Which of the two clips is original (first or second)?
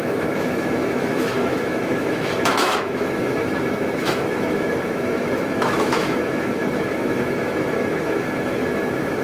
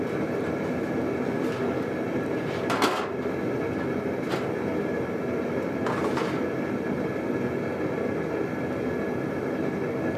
second